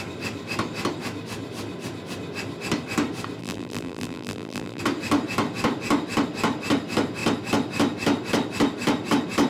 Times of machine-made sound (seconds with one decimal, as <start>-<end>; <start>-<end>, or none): 3.4-4.8